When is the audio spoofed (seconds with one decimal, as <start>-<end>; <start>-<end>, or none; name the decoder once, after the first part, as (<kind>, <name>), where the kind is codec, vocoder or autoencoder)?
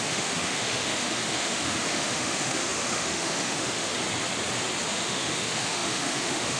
0.0-3.9 (autoencoder, DAC-VAE); 4.9-6.6